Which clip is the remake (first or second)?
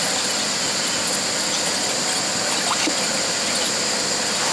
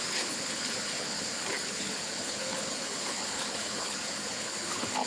second